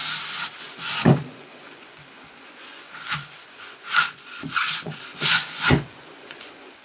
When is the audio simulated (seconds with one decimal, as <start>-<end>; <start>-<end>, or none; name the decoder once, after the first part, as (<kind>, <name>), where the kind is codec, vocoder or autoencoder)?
0.6-6.8 (vocoder, Vocos)